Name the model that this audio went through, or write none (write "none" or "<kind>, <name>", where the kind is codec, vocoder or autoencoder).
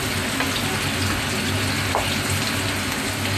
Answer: none